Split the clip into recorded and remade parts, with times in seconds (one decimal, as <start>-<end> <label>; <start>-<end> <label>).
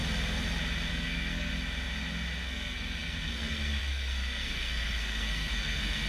0.0-0.9 recorded; 0.9-1.5 remade; 1.5-2.4 recorded; 2.4-6.1 remade